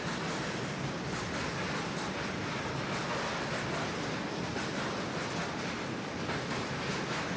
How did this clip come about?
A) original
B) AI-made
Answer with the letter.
A